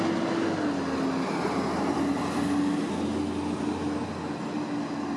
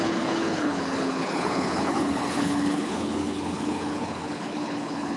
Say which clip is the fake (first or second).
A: second